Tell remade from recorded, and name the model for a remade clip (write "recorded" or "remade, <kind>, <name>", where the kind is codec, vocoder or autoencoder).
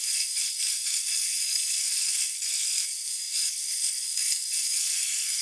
remade, codec, SNAC